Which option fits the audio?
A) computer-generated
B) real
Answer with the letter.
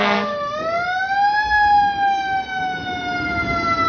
B